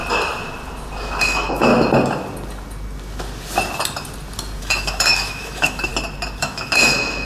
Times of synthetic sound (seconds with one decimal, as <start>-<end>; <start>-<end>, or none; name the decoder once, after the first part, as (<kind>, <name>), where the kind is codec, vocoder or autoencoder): 1.2-1.7 (autoencoder, DAC-VAE); 4.6-5.9; 6.4-7.2